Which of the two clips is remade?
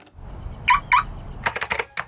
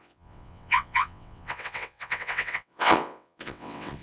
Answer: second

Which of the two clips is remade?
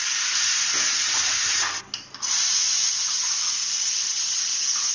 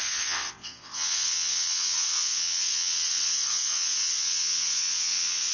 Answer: second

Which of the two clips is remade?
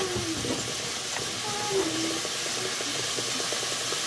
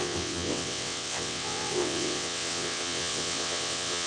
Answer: second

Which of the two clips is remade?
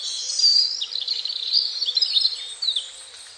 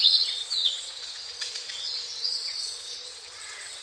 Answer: second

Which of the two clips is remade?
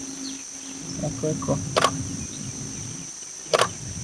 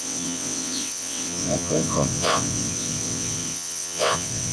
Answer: second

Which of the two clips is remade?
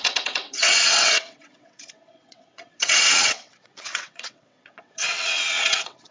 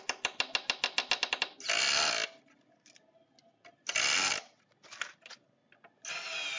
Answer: first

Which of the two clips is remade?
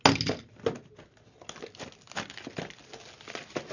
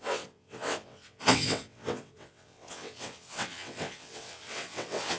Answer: second